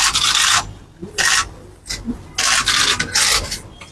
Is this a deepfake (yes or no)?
no